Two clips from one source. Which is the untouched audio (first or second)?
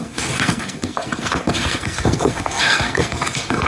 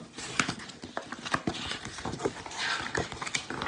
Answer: second